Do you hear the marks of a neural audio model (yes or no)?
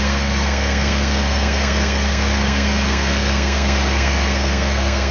yes